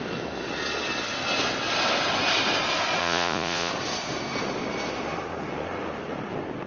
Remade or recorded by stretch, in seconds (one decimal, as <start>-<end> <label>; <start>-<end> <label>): 0.0-3.0 recorded; 3.0-3.7 remade; 3.7-6.7 recorded